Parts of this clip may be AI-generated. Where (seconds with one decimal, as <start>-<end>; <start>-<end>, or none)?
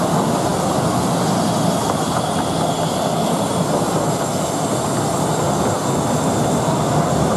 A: none